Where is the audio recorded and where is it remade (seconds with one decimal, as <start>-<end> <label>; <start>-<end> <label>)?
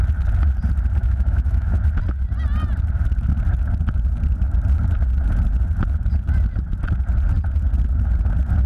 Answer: 0.0-1.0 recorded; 1.0-1.8 remade; 1.8-8.7 recorded